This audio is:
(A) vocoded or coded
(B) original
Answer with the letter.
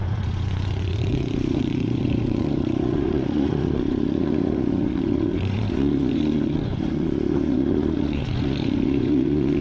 A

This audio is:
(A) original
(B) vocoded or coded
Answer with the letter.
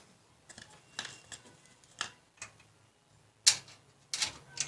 A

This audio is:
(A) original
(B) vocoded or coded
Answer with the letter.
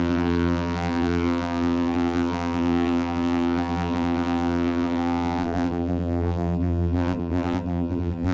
B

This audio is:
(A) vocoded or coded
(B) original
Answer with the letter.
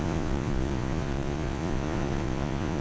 A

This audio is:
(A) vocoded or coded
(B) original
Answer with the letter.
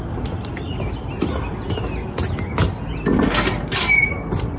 B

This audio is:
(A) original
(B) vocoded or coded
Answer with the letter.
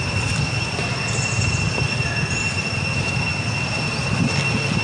A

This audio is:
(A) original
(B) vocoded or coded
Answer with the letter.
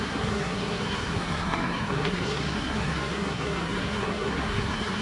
B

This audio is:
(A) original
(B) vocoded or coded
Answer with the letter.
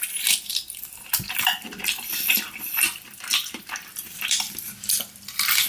B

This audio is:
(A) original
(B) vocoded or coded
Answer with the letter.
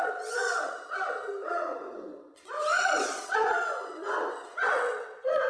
B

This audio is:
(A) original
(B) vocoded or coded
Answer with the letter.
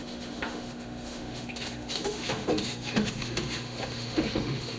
B